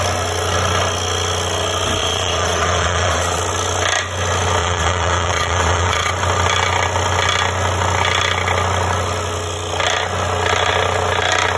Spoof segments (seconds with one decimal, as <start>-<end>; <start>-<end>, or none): 2.0-3.4; 4.6-6.1